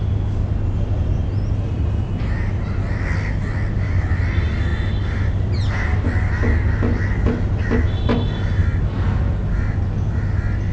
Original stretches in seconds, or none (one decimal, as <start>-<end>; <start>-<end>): 0.0-10.7